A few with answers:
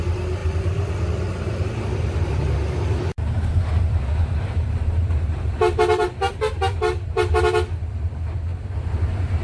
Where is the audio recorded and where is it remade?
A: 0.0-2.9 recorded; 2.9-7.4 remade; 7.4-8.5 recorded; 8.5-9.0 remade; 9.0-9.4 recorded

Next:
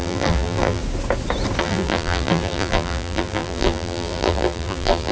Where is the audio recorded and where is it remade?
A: 0.0-0.8 remade; 0.8-1.6 recorded; 1.6-5.1 remade

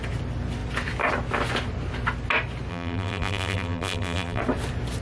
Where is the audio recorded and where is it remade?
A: 0.0-2.7 recorded; 2.7-4.4 remade; 4.4-5.0 recorded

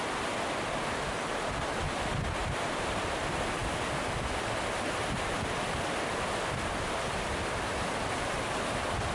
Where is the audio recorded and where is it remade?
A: 0.0-2.4 recorded; 2.4-3.2 remade; 3.2-9.1 recorded